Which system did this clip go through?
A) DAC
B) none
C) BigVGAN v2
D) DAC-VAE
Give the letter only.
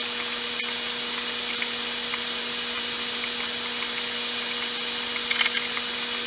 B